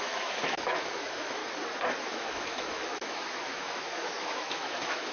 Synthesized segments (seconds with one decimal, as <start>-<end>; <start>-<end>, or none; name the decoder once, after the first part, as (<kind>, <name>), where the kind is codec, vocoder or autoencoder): 0.0-1.4 (autoencoder, DAC-VAE); 2.0-5.1